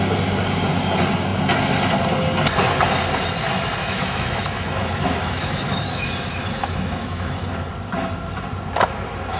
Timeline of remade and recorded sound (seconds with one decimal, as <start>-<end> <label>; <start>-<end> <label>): 0.0-3.8 recorded; 3.8-7.5 remade; 7.5-9.4 recorded

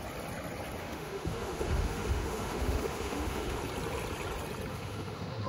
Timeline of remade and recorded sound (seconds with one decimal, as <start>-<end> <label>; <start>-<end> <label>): 0.0-0.8 recorded; 0.8-3.6 remade; 3.6-4.7 recorded; 4.7-5.5 remade

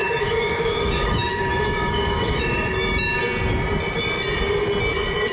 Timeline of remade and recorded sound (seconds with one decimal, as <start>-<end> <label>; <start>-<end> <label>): 0.0-3.2 remade; 3.2-5.3 recorded

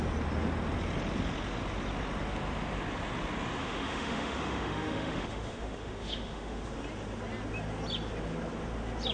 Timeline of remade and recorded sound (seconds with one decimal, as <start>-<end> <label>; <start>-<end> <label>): 0.0-3.6 recorded; 3.6-6.6 remade; 6.6-9.1 recorded

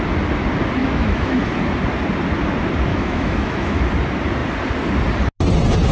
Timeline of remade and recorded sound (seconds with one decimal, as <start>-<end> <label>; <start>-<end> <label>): 0.0-0.8 recorded; 0.8-1.5 remade; 1.5-2.9 recorded; 2.9-3.8 remade; 3.8-5.9 recorded

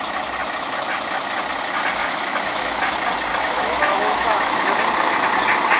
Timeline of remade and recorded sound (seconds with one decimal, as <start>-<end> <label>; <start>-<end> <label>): 0.0-2.0 recorded; 2.0-2.8 remade; 2.8-3.3 recorded; 3.3-4.8 remade; 4.8-5.8 recorded